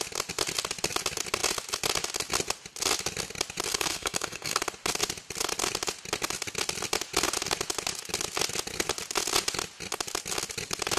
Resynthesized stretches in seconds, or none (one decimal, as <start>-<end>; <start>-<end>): 3.7-4.6